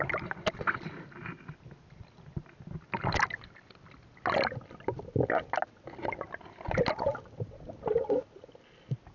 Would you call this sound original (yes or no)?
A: yes